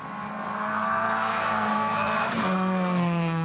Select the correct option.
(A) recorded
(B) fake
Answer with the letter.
B